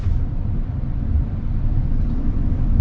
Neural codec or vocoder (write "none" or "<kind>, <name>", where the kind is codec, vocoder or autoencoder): vocoder, BigVGAN v2